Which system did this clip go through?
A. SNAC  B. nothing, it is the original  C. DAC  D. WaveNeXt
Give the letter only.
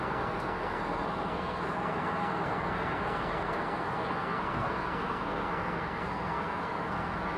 A